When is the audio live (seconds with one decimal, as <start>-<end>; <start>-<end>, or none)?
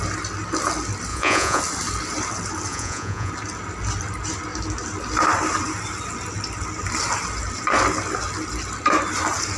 0.0-1.1; 1.6-2.7; 3.3-9.6